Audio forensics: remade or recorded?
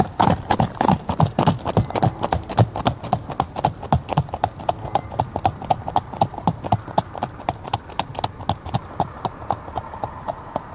recorded